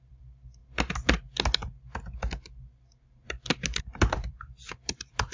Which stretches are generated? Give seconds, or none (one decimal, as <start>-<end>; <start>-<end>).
0.0-0.6; 3.8-5.3